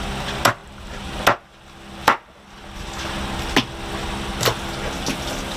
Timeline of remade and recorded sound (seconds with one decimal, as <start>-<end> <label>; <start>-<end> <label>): 0.0-5.6 recorded